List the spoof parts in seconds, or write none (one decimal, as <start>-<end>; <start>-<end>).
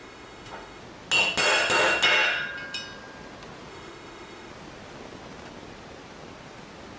0.0-0.8; 3.7-4.5